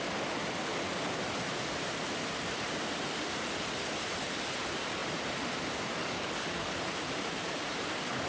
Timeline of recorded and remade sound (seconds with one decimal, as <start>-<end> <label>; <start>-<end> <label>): 0.0-6.0 recorded; 6.0-6.7 remade; 6.7-8.3 recorded